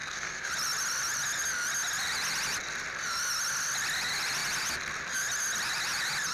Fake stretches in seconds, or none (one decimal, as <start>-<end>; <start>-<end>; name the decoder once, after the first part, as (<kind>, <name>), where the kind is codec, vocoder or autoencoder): 0.0-0.5 (codec, SNAC)